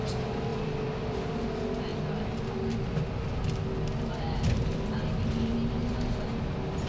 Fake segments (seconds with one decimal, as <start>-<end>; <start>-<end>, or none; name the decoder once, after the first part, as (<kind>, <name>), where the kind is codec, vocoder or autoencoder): none